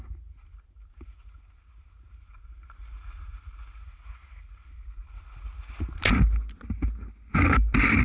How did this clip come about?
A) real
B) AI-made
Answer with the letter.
A